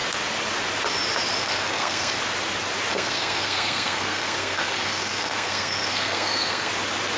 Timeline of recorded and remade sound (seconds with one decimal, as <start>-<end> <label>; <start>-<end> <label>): 0.0-1.4 recorded; 1.4-2.1 remade; 2.1-2.9 recorded; 2.9-6.7 remade; 6.7-7.2 recorded